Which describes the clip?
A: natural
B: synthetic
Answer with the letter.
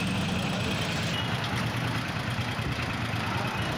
A